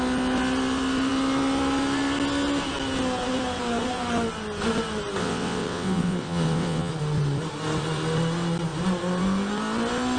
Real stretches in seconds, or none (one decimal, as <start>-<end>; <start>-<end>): 0.0-5.2; 6.9-10.2